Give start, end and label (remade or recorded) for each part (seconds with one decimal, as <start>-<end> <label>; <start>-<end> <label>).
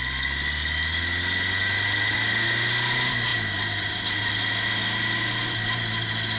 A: 0.0-6.4 recorded